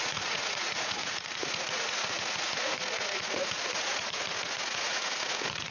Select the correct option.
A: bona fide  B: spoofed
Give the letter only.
B